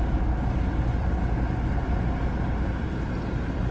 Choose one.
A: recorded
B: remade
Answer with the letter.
A